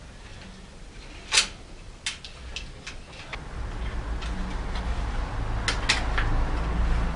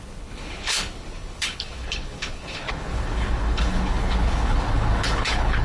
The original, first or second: first